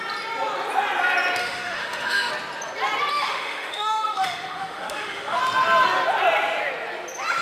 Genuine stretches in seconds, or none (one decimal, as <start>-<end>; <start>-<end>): 0.0-1.4; 2.3-3.1; 5.4-7.4